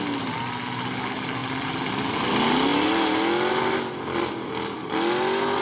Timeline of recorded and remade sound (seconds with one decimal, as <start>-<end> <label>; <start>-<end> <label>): 0.0-5.6 recorded